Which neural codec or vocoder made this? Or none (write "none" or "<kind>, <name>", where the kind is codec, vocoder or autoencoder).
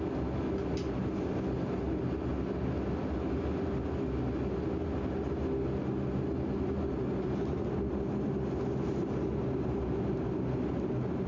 none